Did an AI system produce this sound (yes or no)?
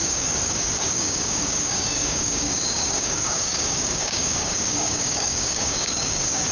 yes